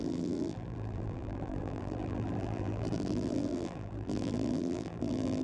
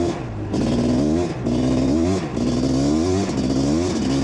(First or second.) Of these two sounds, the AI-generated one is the first